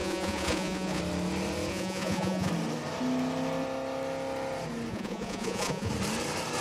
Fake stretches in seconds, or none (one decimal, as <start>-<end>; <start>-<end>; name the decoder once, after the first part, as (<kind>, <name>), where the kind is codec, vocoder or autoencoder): 0.0-1.0 (vocoder, Vocos); 1.7-2.5; 4.9-5.9